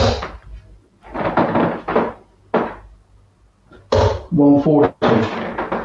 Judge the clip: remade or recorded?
recorded